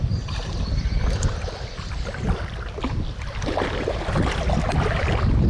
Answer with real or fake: real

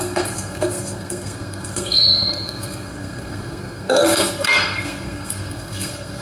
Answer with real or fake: fake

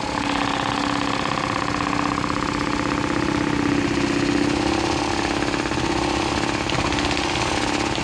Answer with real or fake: real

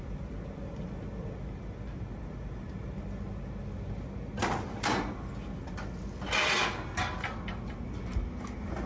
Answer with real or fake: real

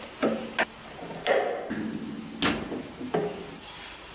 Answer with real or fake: real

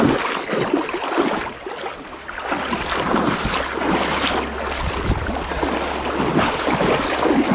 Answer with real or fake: real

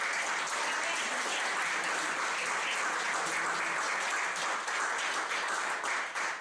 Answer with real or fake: real